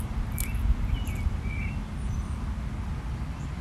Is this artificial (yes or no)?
no